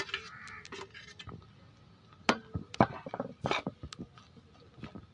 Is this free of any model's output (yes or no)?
yes